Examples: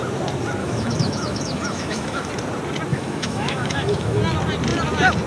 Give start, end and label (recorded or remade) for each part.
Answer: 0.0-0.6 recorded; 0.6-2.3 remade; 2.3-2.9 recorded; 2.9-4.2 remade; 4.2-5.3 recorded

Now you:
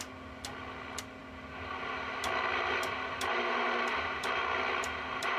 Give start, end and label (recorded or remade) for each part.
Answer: 0.0-5.4 recorded

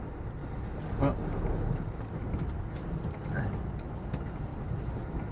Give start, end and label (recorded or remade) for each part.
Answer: 0.0-5.3 recorded